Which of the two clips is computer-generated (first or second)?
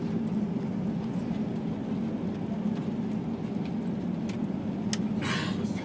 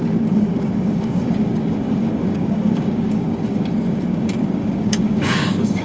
second